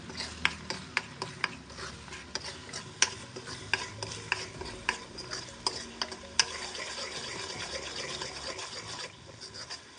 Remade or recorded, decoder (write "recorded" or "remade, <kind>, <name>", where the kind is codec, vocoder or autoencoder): recorded